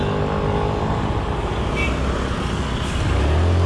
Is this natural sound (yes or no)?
yes